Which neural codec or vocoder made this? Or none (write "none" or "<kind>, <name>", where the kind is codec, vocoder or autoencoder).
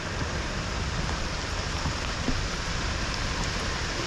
vocoder, BigVGAN v2